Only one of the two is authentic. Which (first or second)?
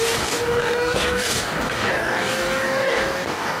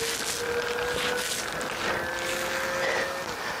second